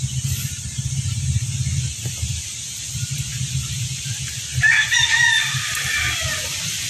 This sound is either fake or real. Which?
real